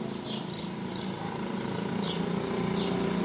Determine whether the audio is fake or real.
real